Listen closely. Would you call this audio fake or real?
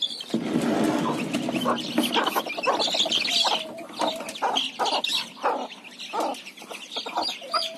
real